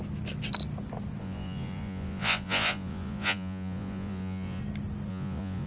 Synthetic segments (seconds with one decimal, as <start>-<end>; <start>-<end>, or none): 1.2-4.6; 5.1-5.7